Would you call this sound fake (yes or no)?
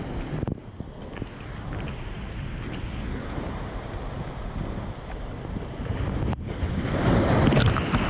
no